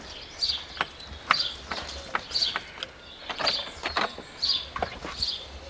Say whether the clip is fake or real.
real